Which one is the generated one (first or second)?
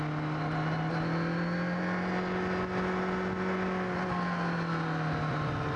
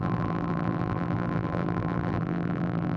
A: second